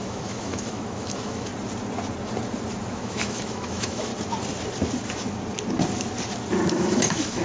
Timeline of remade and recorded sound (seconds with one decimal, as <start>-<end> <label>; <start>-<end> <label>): 0.0-1.5 remade; 1.5-2.9 recorded; 2.9-4.1 remade; 4.1-6.7 recorded; 6.7-7.4 remade